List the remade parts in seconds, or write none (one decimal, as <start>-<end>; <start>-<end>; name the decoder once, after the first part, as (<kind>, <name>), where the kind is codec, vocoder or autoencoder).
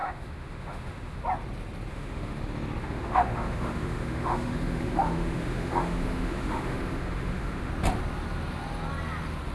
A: 0.0-1.2 (autoencoder, DAC-VAE); 1.9-2.4; 2.8-7.7